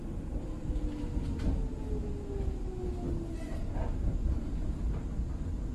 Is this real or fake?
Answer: real